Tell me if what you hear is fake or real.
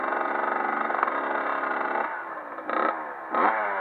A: real